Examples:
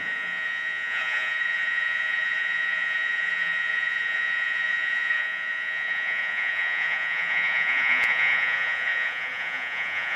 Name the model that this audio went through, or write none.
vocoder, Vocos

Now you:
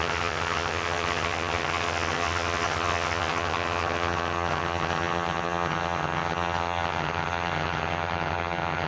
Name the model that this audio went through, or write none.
vocoder, HiFi-GAN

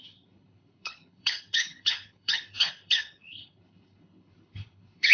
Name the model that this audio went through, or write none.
codec, HILCodec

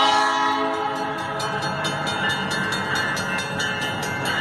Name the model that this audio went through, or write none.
none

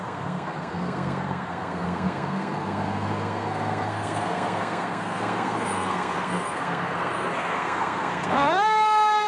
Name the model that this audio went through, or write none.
codec, SNAC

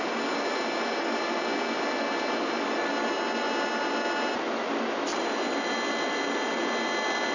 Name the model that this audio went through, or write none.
none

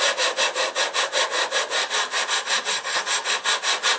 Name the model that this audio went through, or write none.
none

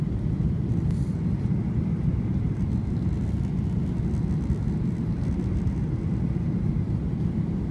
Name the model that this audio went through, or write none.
none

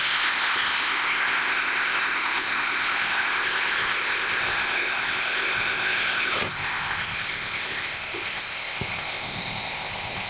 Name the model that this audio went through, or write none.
codec, ZipCodec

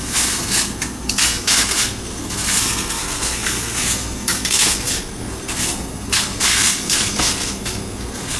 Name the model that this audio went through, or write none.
codec, SNAC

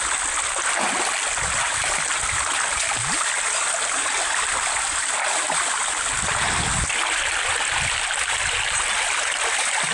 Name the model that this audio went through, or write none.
none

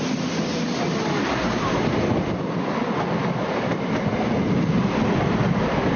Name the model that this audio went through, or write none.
none